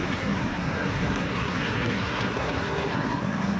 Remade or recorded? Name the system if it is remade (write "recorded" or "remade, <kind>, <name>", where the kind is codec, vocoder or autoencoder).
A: remade, codec, SNAC